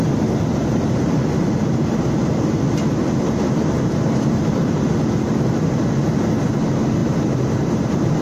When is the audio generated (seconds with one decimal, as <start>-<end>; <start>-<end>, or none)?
0.5-2.0; 3.0-4.9; 7.0-8.2